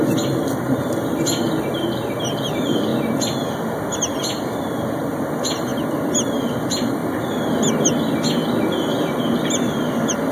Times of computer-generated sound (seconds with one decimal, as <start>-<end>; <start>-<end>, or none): 0.0-2.9; 3.5-5.7; 6.4-7.0; 9.2-10.3